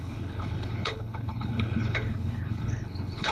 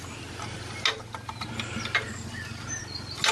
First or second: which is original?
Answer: second